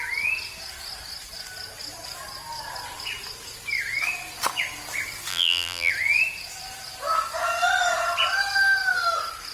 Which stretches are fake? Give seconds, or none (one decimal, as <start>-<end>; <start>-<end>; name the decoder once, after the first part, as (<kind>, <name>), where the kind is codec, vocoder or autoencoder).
5.3-5.9 (vocoder, BigVGAN v2)